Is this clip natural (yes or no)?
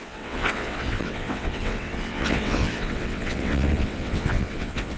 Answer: no